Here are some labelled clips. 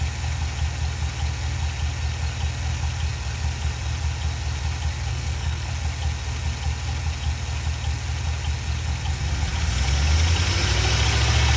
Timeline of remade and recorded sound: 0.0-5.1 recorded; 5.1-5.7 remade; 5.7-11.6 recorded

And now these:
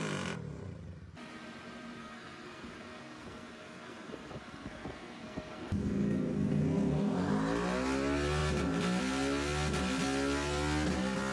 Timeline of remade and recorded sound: 0.0-2.0 recorded; 2.0-7.3 remade; 7.3-11.3 recorded

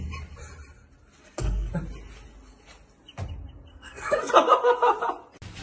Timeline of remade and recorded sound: 0.0-1.2 recorded; 1.2-1.7 remade; 1.7-3.7 recorded; 3.7-4.3 remade; 4.3-5.6 recorded

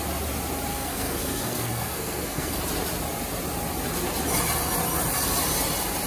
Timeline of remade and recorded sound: 0.0-0.7 recorded; 0.7-2.6 remade; 2.6-6.1 recorded